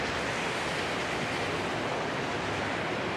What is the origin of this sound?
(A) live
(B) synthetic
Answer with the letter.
A